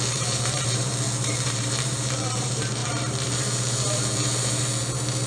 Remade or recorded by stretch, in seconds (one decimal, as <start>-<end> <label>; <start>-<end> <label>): 0.0-5.3 remade